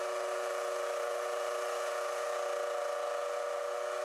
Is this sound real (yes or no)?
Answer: yes